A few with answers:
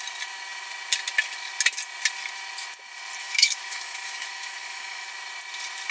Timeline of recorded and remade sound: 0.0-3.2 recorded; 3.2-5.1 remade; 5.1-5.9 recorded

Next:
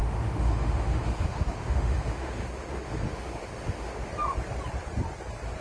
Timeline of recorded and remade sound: 0.0-4.1 remade; 4.1-5.6 recorded

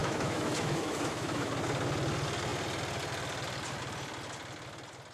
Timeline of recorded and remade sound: 0.0-1.5 remade; 1.5-5.1 recorded

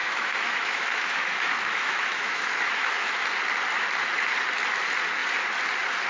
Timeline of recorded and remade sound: 0.0-3.1 remade; 3.1-6.1 recorded

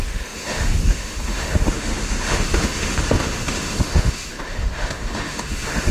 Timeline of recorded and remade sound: 0.0-5.9 remade

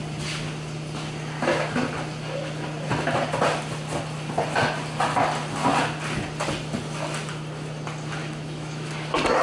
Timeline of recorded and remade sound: 0.0-8.2 recorded; 8.2-8.9 remade; 8.9-9.4 recorded

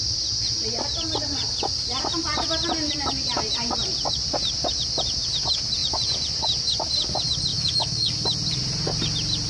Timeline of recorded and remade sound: 0.0-7.5 recorded; 7.5-8.1 remade; 8.1-9.5 recorded

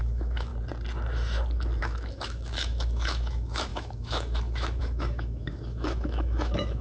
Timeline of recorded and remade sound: 0.0-0.5 remade; 0.5-1.8 recorded; 1.8-6.8 remade